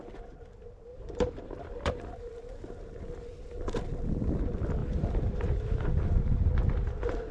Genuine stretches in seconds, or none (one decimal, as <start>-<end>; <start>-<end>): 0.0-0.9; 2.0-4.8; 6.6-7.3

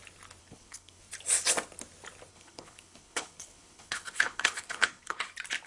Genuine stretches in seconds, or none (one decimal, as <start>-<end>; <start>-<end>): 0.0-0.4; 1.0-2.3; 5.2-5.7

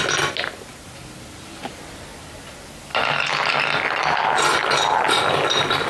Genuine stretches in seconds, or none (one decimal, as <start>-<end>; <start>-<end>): 0.0-5.9

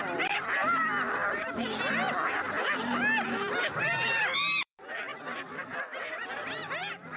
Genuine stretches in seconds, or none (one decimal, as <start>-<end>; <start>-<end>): 1.2-3.8

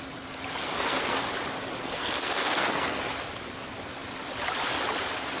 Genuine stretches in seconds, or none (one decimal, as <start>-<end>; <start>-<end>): 0.0-0.6; 1.2-1.8; 3.0-5.4

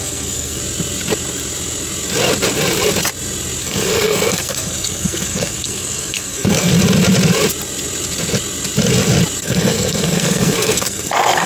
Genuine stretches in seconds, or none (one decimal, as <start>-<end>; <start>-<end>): 0.6-3.6; 6.7-9.4

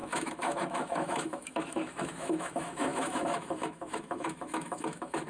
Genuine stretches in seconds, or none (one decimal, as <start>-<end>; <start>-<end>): none

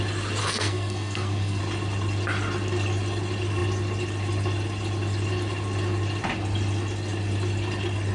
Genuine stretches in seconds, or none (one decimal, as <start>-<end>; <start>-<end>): 0.0-0.4; 1.6-8.1